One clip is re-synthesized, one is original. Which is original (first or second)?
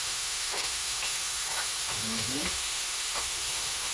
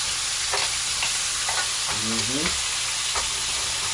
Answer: second